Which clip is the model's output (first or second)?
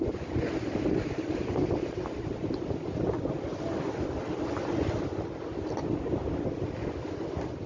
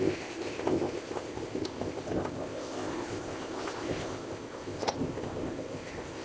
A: second